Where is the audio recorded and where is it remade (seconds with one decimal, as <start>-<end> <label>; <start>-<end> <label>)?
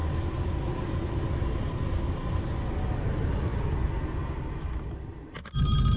0.0-6.0 recorded